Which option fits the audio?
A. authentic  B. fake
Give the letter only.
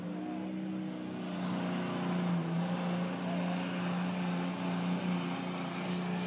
A